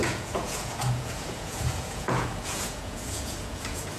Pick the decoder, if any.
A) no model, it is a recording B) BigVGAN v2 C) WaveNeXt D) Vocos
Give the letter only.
D